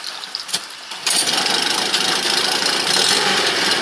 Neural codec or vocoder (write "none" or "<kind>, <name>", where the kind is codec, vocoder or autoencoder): vocoder, BigVGAN v2